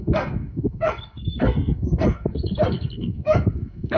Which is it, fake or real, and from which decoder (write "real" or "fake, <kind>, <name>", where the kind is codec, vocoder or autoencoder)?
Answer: fake, codec, SNAC